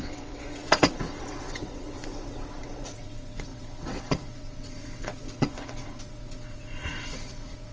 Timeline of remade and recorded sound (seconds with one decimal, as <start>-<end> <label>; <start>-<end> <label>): 0.0-7.7 remade